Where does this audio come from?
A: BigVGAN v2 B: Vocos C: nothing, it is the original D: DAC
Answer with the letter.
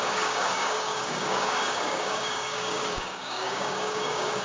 D